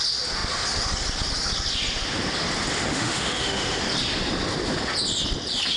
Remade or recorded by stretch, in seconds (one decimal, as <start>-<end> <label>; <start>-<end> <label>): 0.0-2.9 recorded; 2.9-3.8 remade; 3.8-5.8 recorded